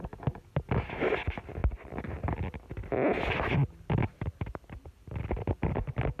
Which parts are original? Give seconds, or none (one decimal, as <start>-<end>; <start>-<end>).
0.0-6.2